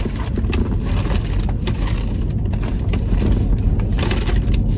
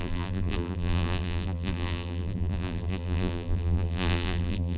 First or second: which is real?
first